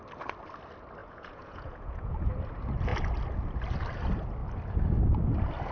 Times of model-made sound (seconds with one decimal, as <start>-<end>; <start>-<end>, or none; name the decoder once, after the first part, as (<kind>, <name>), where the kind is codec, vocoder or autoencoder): 1.0-2.3 (vocoder, Vocos)